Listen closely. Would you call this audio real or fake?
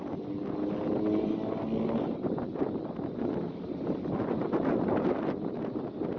real